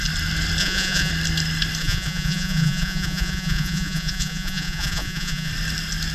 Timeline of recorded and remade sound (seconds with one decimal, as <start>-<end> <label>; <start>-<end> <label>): 0.0-0.6 recorded; 0.6-1.1 remade; 1.1-1.8 recorded; 1.8-5.5 remade; 5.5-6.1 recorded